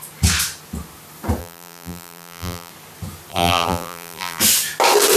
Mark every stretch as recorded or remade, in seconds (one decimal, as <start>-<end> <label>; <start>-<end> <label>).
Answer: 0.0-1.4 recorded; 1.4-2.7 remade; 2.7-3.3 recorded; 3.3-4.4 remade; 4.4-5.2 recorded